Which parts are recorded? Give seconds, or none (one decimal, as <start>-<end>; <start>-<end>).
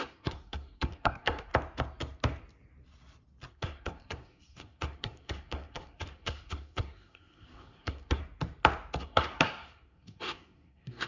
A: 1.5-3.5; 8.2-9.0